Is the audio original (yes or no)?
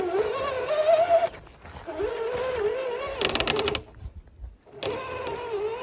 yes